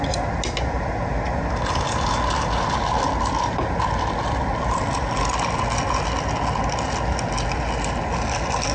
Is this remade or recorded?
recorded